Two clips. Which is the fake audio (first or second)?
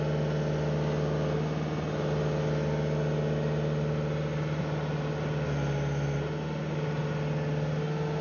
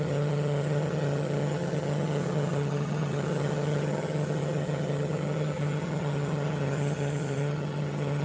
second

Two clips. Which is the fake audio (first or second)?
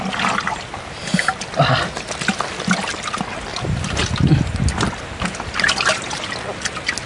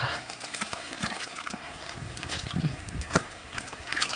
second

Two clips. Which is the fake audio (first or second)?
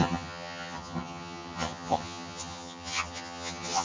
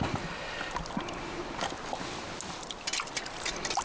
first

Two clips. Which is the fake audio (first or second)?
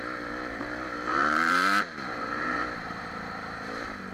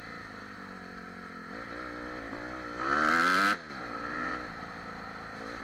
first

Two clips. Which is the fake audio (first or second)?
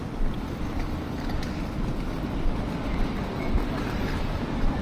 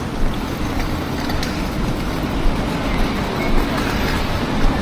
first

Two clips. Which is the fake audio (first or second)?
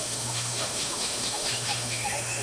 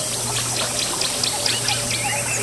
first